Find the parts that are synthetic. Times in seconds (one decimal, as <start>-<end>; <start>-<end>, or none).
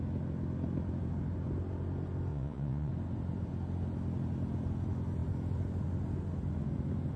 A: 2.3-2.9